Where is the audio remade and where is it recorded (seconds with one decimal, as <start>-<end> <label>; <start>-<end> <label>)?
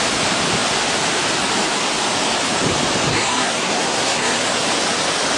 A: 0.0-3.1 recorded; 3.1-4.4 remade; 4.4-5.4 recorded